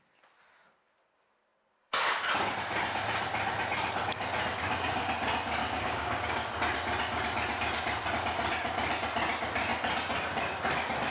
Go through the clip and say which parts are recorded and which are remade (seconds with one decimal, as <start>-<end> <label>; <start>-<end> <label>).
0.0-5.6 recorded; 5.6-6.5 remade; 6.5-11.1 recorded